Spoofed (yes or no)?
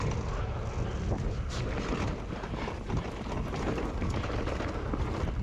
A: no